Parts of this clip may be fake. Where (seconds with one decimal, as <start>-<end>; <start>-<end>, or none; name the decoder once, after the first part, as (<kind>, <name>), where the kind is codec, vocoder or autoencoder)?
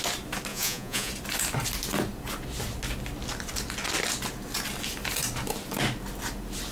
0.5-1.1 (vocoder, Vocos)